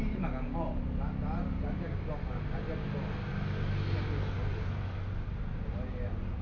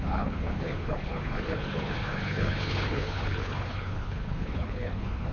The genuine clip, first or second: first